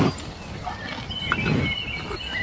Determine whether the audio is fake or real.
real